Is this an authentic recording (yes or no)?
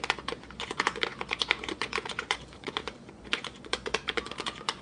no